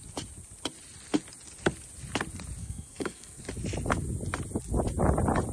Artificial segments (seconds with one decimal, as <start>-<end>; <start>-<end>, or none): 2.6-3.4